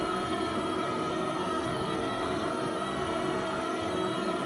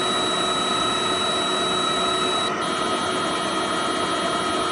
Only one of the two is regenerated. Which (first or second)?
first